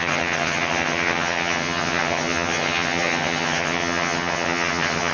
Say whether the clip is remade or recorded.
remade